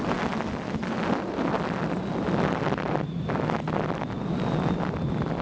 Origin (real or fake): real